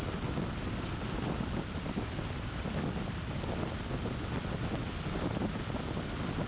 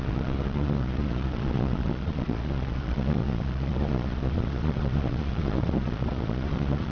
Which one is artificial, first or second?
second